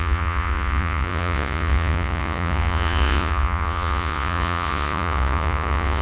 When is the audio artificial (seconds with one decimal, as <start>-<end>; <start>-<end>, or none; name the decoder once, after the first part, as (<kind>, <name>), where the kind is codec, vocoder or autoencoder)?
0.0-6.0 (vocoder, Vocos)